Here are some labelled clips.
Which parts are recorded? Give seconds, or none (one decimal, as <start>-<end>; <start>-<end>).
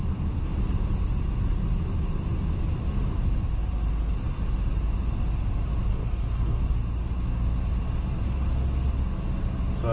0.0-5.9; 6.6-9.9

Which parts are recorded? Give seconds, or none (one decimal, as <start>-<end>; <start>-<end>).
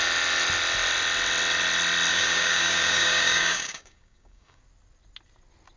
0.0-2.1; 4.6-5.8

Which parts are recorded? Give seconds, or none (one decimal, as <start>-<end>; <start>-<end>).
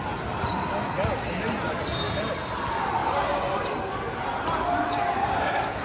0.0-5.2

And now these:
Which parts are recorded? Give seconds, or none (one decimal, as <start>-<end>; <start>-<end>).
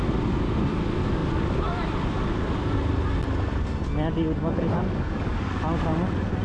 0.0-4.8; 5.5-6.4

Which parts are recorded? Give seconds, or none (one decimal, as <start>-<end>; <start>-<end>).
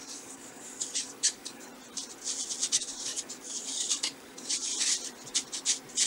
1.7-2.7; 4.7-6.1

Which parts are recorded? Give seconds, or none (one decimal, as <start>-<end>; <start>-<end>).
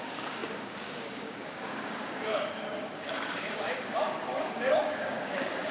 none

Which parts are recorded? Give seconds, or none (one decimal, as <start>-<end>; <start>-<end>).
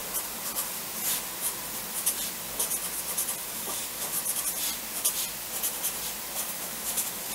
0.0-3.4; 4.2-6.4